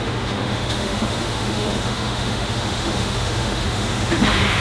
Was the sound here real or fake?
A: fake